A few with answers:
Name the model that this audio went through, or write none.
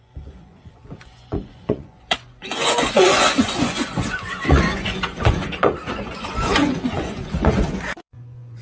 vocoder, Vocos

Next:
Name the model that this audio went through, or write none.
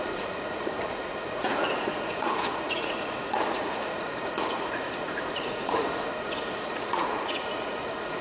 vocoder, Vocos